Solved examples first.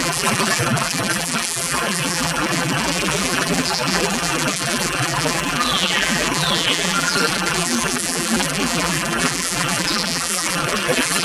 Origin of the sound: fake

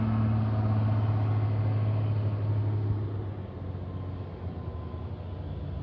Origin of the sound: real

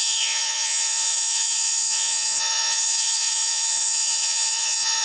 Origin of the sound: fake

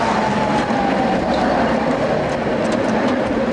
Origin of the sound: real